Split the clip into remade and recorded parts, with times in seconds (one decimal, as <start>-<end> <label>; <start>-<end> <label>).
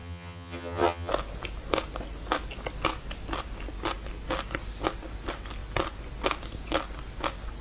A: 0.0-1.1 remade; 1.1-7.6 recorded